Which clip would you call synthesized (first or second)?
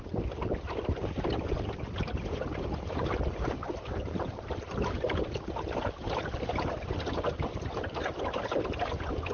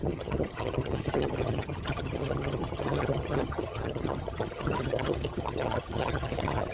second